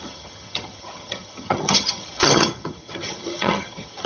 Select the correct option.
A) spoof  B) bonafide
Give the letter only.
A